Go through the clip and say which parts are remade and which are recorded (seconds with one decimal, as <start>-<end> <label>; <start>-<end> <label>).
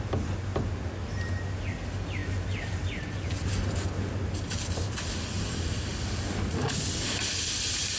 0.0-8.0 recorded